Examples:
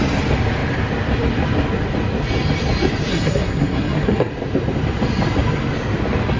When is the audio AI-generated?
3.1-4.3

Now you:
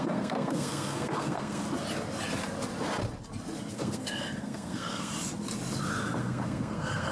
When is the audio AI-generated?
0.0-1.6; 3.7-5.1; 6.2-7.1

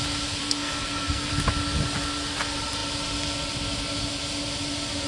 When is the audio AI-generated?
0.4-1.3

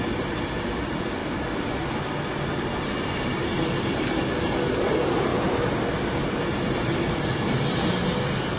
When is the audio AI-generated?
none

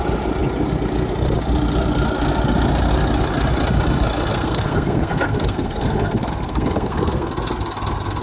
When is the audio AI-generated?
4.3-7.3

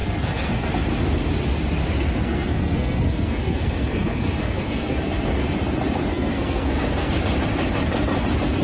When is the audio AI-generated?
0.0-0.7; 2.2-5.4; 6.1-7.1

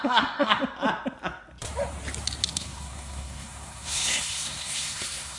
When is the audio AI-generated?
0.0-0.6; 2.5-5.4

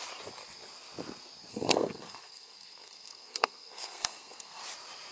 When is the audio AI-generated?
1.5-4.6